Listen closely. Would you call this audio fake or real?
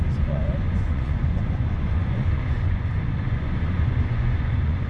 fake